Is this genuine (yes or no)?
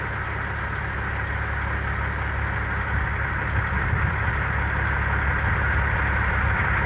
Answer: yes